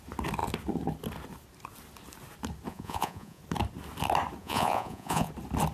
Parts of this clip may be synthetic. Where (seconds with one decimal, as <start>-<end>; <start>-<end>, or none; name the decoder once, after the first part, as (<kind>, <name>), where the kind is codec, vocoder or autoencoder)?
2.7-3.4 (vocoder, Vocos); 4.4-5.3